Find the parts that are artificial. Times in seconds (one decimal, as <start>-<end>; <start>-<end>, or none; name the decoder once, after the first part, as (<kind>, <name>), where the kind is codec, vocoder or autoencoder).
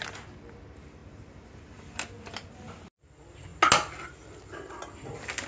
none